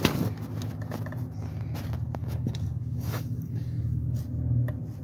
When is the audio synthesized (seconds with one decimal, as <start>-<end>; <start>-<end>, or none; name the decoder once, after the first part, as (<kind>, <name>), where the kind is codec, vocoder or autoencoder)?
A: 2.2-4.2 (codec, DAC)